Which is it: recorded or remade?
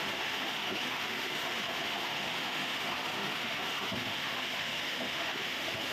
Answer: remade